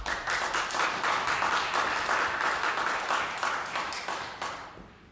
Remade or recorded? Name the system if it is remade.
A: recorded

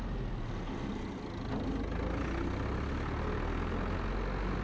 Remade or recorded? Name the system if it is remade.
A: recorded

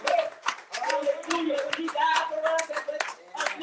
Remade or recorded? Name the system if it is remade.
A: recorded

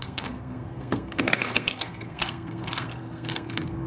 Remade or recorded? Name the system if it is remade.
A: remade, codec, SNAC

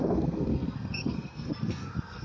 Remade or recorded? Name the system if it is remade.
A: remade, codec, SNAC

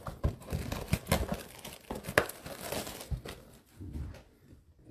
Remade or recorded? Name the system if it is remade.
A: recorded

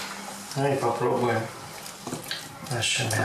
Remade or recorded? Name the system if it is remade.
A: recorded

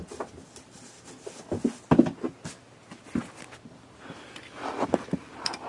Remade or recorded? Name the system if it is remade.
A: recorded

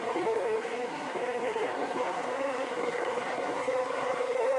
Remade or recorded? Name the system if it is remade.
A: remade, codec, SNAC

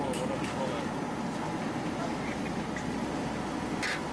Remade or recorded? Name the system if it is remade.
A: recorded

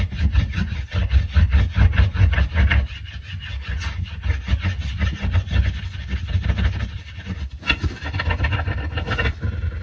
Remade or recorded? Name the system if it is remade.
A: recorded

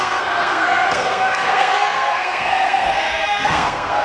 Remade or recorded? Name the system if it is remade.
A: remade, codec, SNAC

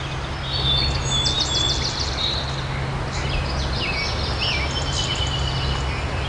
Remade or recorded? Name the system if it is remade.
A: recorded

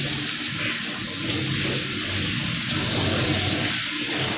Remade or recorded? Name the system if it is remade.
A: recorded